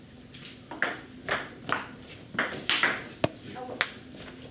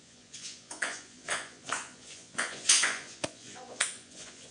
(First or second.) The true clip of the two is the first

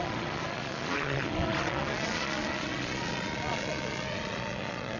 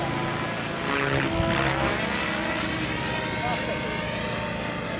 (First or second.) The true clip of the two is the second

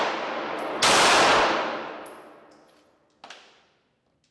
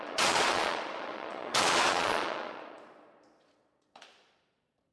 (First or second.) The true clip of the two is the first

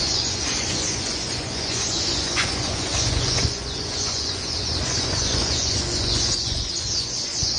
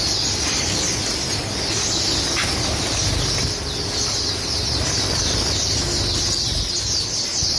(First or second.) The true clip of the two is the second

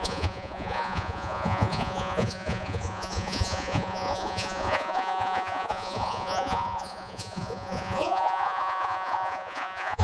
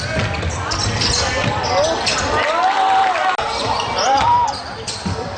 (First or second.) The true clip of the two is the second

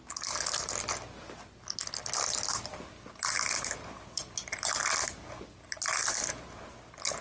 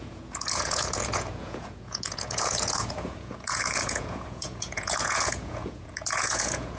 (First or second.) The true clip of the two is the first